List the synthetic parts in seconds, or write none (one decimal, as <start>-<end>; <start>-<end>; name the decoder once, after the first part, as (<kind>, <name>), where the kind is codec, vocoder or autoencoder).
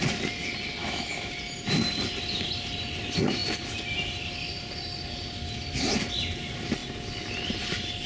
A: 0.8-1.3 (autoencoder, DAC-VAE)